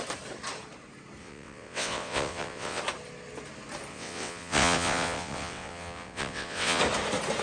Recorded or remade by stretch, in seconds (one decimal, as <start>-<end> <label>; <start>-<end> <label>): 0.0-1.2 recorded; 1.2-2.8 remade; 2.8-3.9 recorded; 3.9-6.8 remade; 6.8-7.4 recorded